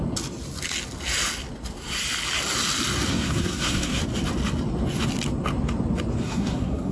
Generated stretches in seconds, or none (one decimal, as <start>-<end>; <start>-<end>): 3.1-4.0; 6.2-6.9